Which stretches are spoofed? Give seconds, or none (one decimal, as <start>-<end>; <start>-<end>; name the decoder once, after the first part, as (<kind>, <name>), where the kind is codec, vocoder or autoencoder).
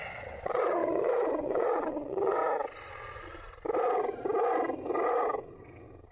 0.0-2.4 (vocoder, WaveNeXt)